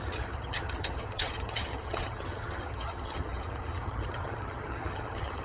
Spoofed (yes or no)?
yes